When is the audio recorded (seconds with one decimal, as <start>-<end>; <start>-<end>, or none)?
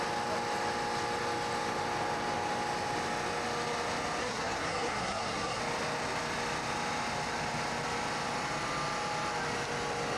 0.0-4.2; 5.6-10.2